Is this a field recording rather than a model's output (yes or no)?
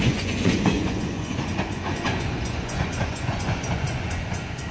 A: no